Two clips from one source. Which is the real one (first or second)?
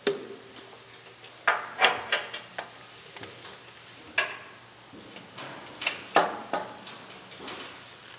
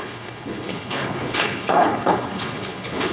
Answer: first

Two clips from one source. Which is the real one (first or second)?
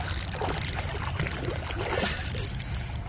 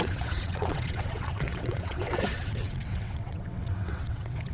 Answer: first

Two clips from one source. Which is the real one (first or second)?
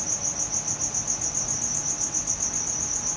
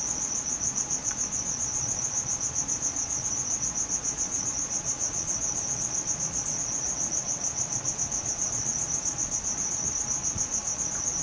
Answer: first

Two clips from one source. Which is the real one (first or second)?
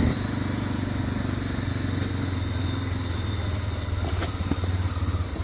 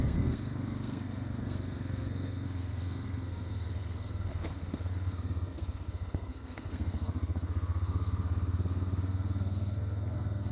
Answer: first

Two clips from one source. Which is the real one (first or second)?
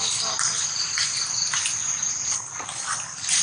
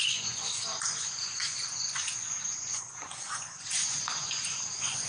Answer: first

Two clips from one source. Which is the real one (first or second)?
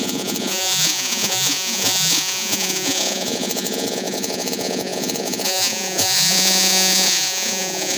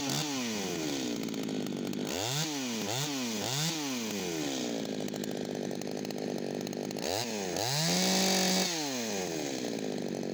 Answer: second